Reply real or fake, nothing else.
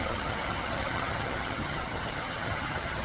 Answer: fake